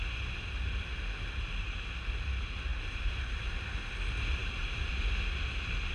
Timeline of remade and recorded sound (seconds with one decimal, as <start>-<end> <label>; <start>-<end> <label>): 0.0-2.7 recorded; 2.7-3.9 remade; 3.9-4.4 recorded; 4.4-4.9 remade; 4.9-5.9 recorded